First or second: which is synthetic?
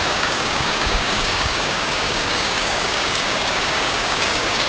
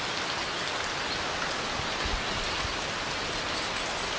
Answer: first